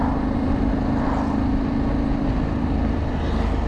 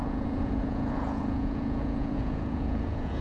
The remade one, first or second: second